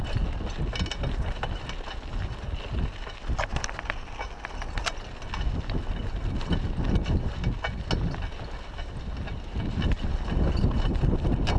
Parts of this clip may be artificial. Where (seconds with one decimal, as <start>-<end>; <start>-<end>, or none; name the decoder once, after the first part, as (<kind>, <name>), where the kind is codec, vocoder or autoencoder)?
none